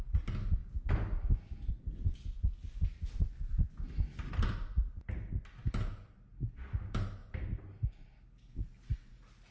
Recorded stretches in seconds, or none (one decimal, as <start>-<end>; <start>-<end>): 0.0-7.2; 8.2-9.5